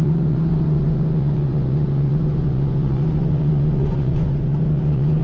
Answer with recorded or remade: remade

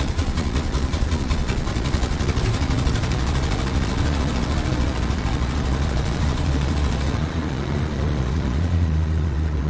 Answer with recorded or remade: remade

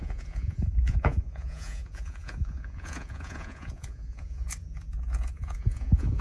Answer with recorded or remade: remade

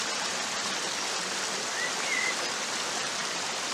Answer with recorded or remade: recorded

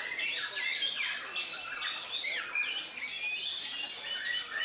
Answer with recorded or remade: recorded